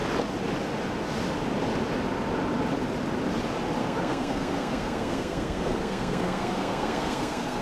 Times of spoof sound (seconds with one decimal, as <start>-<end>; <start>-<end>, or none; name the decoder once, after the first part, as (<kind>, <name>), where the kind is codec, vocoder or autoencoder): 3.8-7.6 (codec, SNAC)